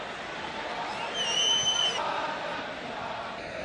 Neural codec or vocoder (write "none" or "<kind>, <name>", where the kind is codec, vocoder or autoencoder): none